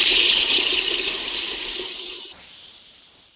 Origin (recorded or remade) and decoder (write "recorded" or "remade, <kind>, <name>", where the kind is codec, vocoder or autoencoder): remade, vocoder, BigVGAN v2